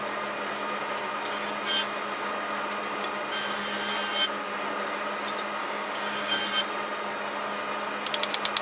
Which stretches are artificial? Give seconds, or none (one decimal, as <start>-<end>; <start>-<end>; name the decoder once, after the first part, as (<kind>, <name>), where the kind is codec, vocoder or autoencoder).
5.6-6.4 (codec, DAC)

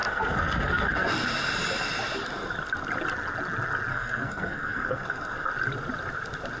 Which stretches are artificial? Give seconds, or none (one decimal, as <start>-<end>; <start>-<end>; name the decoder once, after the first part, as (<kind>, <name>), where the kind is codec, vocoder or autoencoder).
0.0-1.1 (codec, SNAC); 3.9-5.5

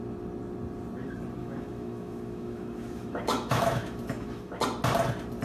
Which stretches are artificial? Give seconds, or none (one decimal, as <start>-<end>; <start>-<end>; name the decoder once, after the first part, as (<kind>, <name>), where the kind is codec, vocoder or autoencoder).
1.4-4.6 (autoencoder, DAC-VAE)

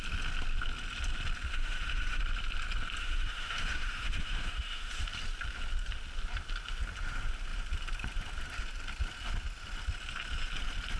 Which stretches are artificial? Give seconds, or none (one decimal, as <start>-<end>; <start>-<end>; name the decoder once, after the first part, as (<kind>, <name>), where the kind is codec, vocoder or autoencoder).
1.5-2.2 (autoencoder, DAC-VAE); 3.0-5.0

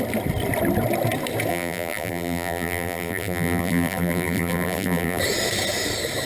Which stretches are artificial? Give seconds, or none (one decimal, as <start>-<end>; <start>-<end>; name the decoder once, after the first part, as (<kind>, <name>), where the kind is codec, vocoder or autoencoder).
1.5-5.2 (vocoder, BigVGAN v2)

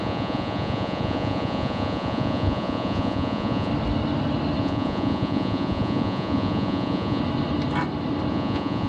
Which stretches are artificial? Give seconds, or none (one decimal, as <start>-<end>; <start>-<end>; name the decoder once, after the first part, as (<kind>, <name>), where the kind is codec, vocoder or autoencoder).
0.0-3.7 (vocoder, Vocos); 4.6-7.2; 8.3-8.9

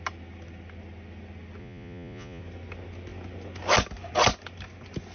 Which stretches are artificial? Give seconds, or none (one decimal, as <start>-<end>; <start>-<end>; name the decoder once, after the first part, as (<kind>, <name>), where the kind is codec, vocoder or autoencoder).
1.6-2.4 (vocoder, Vocos)

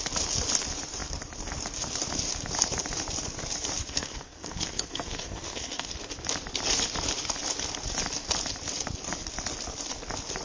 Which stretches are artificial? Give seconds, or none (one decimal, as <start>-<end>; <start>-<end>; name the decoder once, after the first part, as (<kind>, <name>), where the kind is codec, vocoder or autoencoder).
3.8-5.9 (codec, SNAC)